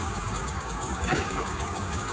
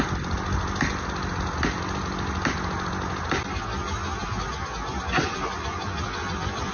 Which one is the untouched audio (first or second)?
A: second